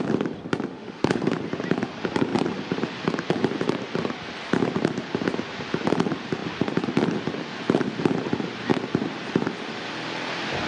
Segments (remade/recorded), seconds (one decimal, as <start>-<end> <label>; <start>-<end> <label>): 0.0-0.7 recorded; 0.7-1.3 remade; 1.3-10.7 recorded